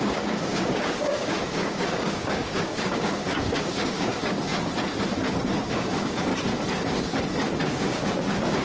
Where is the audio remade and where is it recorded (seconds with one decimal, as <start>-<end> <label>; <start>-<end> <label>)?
0.0-4.5 remade; 4.5-5.7 recorded; 5.7-6.3 remade; 6.3-7.6 recorded; 7.6-8.6 remade